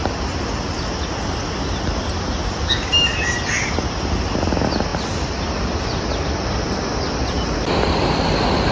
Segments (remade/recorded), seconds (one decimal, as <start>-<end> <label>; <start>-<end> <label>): 0.0-8.7 recorded